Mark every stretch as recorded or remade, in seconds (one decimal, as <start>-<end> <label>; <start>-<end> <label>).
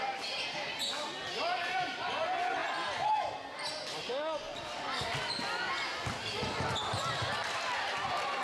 0.0-8.4 recorded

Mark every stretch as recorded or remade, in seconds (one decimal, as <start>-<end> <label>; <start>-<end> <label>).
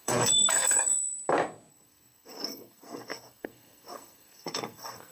0.0-0.9 remade; 0.9-1.7 recorded; 1.7-5.1 remade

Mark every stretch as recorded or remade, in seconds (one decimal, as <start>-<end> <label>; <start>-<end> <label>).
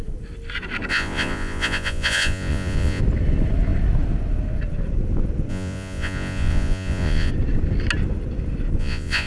0.0-0.9 recorded; 0.9-3.0 remade; 3.0-5.5 recorded; 5.5-7.3 remade; 7.3-8.8 recorded; 8.8-9.3 remade